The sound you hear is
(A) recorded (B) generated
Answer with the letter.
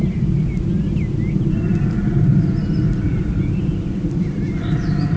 A